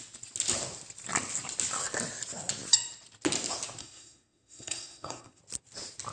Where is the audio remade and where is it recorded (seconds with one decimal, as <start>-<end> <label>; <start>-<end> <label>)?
0.0-3.8 recorded; 3.8-5.4 remade; 5.4-6.1 recorded